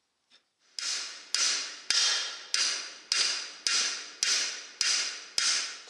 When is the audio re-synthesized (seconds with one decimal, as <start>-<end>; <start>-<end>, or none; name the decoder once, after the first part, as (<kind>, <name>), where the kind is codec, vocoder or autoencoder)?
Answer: none

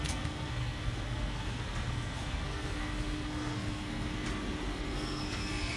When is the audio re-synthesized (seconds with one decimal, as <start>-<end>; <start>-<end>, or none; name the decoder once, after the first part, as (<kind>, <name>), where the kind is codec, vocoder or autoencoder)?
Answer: 0.0-4.2 (codec, SNAC); 4.7-5.8

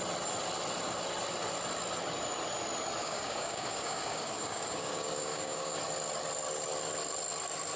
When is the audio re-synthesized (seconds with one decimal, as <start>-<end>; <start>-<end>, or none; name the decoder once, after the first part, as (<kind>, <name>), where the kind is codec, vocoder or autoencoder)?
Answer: 3.0-5.8 (codec, DAC)

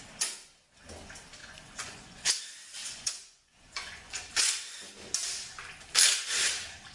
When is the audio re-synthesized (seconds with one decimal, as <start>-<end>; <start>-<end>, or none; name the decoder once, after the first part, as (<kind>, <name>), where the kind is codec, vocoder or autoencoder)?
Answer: 1.4-2.4 (vocoder, Vocos); 2.8-4.6